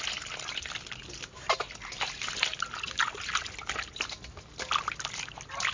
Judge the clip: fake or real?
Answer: real